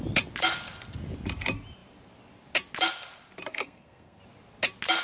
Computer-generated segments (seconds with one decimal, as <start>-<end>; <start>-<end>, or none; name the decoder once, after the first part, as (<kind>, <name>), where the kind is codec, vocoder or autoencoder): 3.5-4.2 (codec, SNAC)